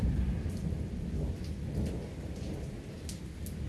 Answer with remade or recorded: recorded